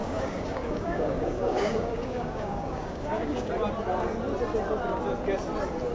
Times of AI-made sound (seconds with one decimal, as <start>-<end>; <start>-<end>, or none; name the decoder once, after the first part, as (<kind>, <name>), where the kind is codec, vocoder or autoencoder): 0.0-3.5 (codec, DAC)